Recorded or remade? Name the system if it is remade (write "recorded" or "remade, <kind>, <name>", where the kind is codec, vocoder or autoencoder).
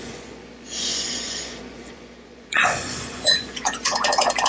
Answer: remade, vocoder, Vocos